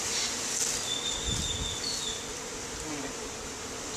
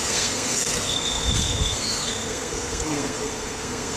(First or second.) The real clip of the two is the first